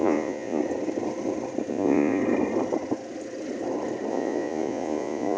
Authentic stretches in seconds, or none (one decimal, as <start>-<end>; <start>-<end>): 0.6-1.7; 2.2-4.1